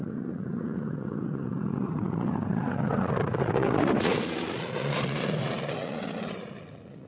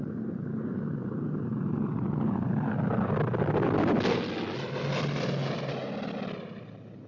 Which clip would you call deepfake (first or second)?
first